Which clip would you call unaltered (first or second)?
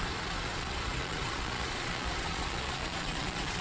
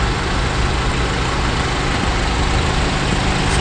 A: second